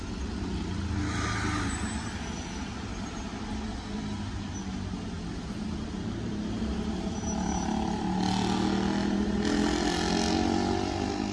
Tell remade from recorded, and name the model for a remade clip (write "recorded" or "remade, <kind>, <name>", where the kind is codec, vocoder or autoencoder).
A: recorded